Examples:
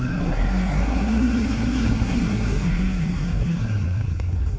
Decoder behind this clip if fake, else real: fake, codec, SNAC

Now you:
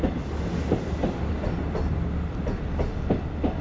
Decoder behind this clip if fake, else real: real